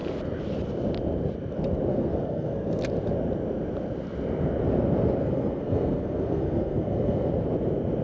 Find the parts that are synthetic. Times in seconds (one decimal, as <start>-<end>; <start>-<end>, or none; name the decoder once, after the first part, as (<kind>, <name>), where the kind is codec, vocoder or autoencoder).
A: 1.9-2.8 (codec, SNAC); 5.2-7.3

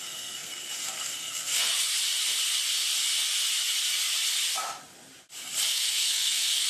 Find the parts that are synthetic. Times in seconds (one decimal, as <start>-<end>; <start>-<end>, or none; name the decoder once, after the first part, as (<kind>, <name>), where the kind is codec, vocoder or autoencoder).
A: 0.0-1.7 (codec, SNAC); 5.7-6.7

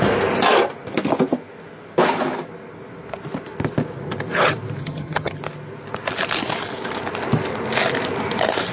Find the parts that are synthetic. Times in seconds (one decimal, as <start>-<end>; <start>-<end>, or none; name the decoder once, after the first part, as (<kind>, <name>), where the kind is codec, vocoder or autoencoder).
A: 4.8-5.4 (vocoder, HiFi-GAN)

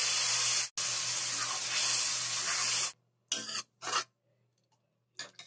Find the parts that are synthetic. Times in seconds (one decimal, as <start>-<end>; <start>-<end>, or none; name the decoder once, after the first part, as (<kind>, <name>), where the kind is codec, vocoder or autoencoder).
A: none

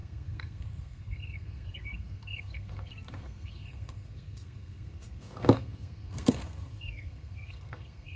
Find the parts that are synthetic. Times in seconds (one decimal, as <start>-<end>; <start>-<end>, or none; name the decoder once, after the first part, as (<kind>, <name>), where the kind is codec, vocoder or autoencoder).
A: 0.0-8.2 (codec, SNAC)

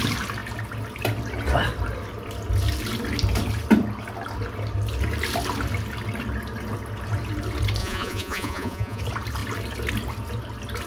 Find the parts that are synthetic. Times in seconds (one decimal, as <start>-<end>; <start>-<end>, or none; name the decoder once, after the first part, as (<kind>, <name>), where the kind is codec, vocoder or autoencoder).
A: 7.8-9.0 (vocoder, Vocos)

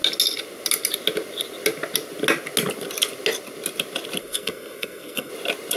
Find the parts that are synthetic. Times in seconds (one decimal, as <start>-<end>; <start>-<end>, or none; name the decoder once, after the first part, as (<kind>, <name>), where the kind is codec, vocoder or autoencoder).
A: 4.2-5.3 (codec, SNAC)